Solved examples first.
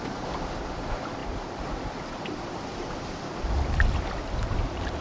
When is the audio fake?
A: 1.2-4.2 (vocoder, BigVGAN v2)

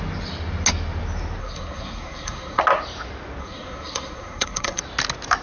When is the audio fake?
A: 1.4-2.6 (codec, SNAC); 3.4-4.8